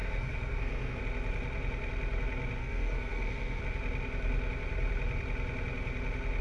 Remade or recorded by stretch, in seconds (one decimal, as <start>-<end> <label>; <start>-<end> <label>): 0.0-1.0 remade; 1.0-2.6 recorded; 2.6-3.6 remade; 3.6-6.4 recorded